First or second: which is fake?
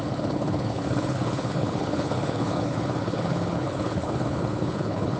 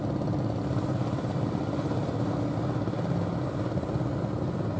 first